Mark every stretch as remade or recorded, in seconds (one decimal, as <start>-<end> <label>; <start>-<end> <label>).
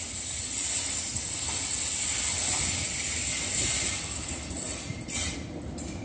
0.0-6.0 recorded